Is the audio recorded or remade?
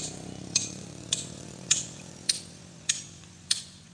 remade